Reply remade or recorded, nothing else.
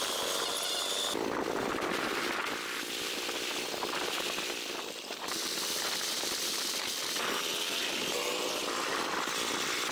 recorded